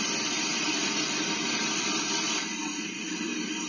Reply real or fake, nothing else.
fake